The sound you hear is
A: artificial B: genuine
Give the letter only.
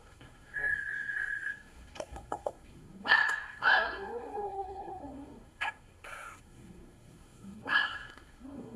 A